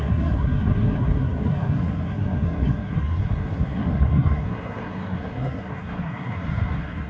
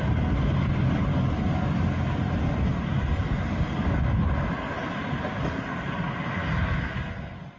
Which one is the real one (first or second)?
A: second